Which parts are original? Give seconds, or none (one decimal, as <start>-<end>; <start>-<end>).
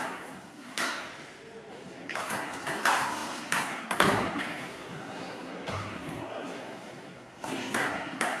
1.1-1.7